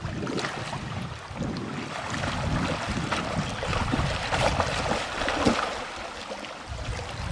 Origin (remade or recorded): recorded